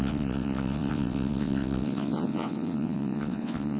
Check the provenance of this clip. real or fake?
fake